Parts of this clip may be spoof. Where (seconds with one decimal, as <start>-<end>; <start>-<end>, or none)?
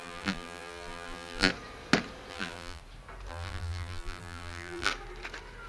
0.0-1.5; 2.3-2.8; 3.3-4.9